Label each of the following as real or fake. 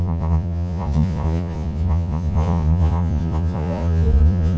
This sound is fake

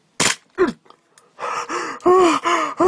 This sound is real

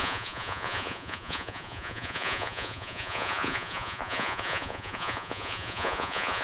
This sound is fake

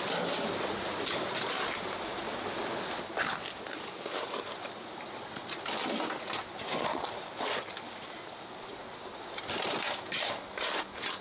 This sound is real